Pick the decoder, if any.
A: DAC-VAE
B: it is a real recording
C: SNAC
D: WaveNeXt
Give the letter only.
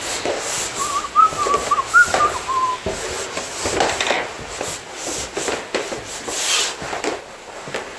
B